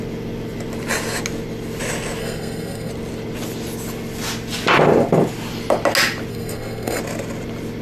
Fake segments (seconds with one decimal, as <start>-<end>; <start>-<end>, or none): 2.2-2.9; 6.3-7.0